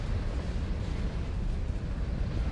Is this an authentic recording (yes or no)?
no